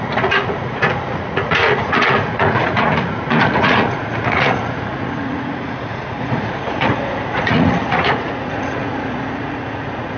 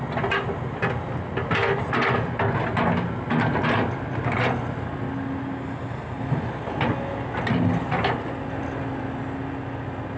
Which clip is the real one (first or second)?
second